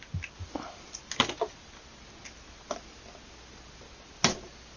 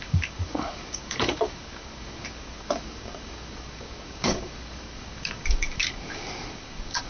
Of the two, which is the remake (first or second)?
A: second